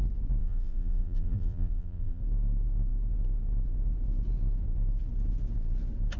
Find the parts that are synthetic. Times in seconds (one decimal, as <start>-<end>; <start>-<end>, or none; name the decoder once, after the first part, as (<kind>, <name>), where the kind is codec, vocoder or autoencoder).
0.4-2.2 (vocoder, BigVGAN v2)